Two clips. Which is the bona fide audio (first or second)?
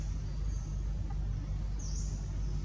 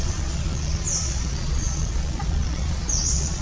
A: first